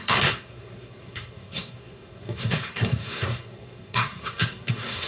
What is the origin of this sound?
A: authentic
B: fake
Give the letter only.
B